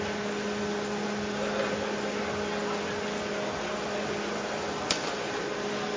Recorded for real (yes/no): yes